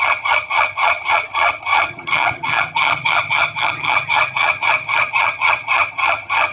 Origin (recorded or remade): remade